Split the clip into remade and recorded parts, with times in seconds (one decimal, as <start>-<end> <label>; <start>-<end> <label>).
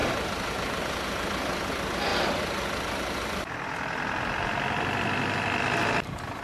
0.0-6.4 recorded